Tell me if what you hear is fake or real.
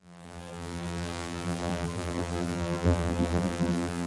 fake